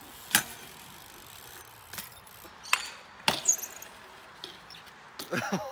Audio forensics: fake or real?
real